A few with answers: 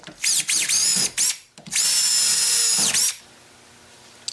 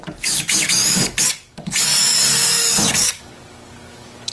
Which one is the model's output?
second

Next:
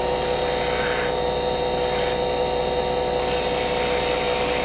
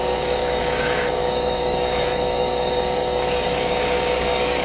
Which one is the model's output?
second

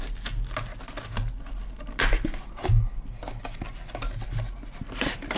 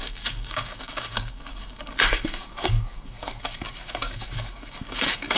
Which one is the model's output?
second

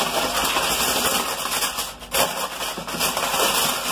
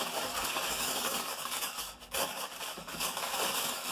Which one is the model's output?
second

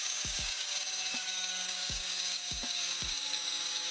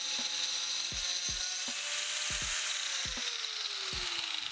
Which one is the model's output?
first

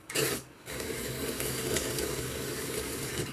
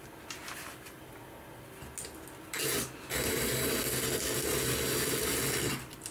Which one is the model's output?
first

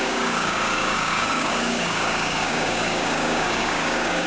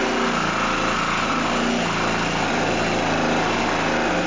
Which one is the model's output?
first